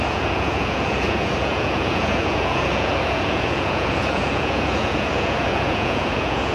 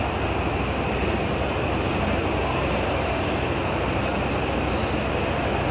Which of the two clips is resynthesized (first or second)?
first